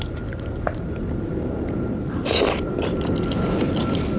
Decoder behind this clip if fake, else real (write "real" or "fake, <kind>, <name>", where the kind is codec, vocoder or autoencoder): real